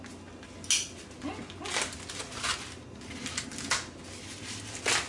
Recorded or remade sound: recorded